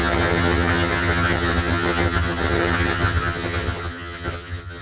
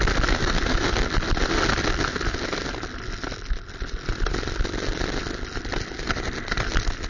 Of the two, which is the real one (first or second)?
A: second